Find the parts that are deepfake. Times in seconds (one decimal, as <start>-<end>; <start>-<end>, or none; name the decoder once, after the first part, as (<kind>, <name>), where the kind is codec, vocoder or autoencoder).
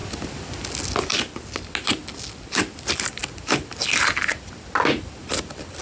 none